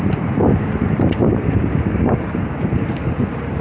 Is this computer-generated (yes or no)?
yes